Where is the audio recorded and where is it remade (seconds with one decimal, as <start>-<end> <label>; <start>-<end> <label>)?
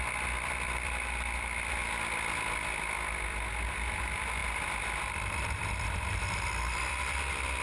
0.0-1.8 remade; 1.8-3.7 recorded; 3.7-7.6 remade